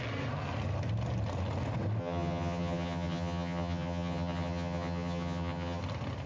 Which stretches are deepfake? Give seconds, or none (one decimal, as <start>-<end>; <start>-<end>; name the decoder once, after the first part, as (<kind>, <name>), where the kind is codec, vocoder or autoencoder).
2.0-5.8 (vocoder, HiFi-GAN)